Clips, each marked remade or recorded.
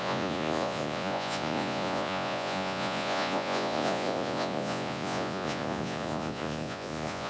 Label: remade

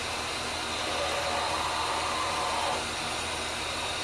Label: recorded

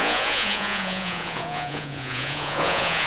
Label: remade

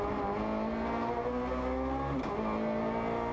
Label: recorded